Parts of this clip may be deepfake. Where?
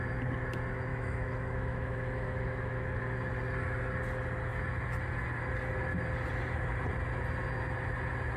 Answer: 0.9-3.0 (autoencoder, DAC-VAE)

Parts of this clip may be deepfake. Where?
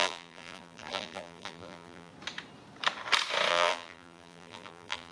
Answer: 0.0-2.1 (vocoder, BigVGAN v2); 3.5-5.1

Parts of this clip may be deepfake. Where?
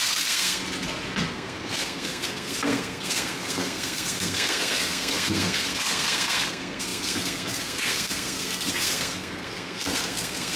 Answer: 0.0-0.6 (codec, SNAC); 1.3-10.6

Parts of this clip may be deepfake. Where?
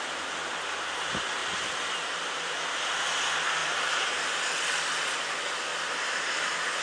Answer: 1.4-2.5 (vocoder, BigVGAN v2); 3.6-4.3; 5.7-6.8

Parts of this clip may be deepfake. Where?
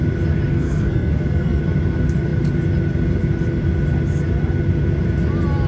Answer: 0.5-1.6 (codec, SNAC)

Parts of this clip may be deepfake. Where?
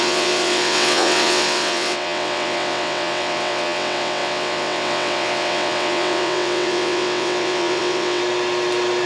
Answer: 0.0-8.2 (vocoder, WaveNeXt)